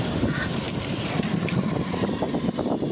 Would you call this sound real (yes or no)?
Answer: yes